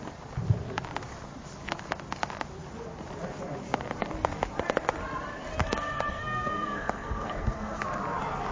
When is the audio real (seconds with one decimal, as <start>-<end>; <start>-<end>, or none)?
0.0-5.6; 7.8-8.5